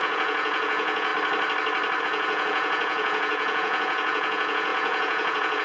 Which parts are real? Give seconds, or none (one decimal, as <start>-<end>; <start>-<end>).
1.1-2.0